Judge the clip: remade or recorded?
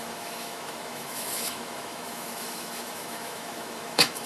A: remade